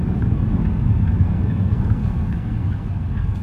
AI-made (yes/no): yes